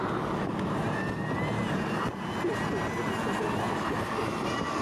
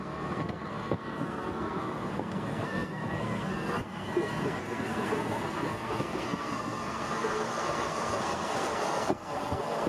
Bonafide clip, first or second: first